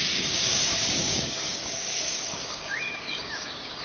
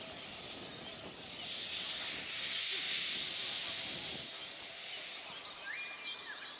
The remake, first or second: first